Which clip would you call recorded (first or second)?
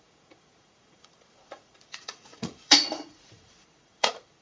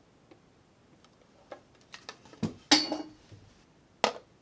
second